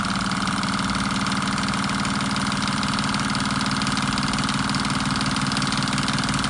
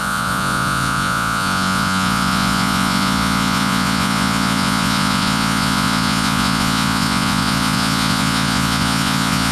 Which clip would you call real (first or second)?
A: first